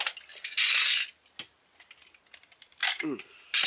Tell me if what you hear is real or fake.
real